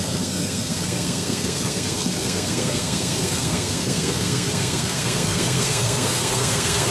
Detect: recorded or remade remade